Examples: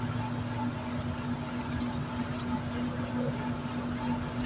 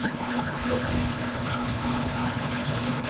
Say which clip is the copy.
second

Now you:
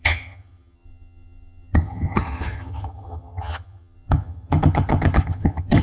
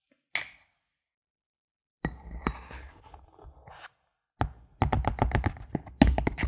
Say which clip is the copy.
first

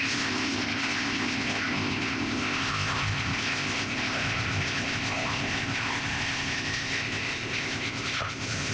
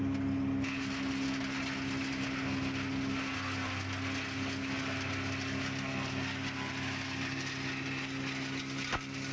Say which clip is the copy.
first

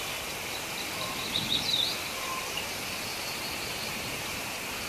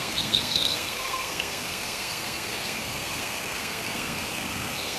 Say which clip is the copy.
second